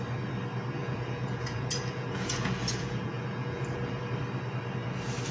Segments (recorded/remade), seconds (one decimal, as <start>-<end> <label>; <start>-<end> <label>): 0.0-0.8 recorded; 0.8-4.0 remade; 4.0-5.3 recorded